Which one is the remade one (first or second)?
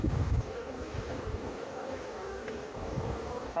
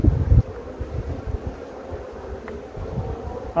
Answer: first